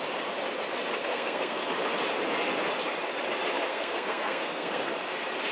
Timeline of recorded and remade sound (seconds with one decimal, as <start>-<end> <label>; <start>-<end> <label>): 0.0-1.0 recorded; 1.0-1.6 remade; 1.6-3.7 recorded; 3.7-4.9 remade; 4.9-5.5 recorded